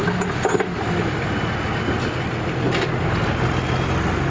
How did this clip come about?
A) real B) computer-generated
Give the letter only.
A